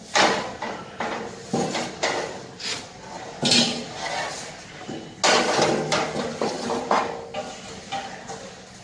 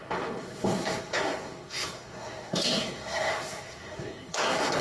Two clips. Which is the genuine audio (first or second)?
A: first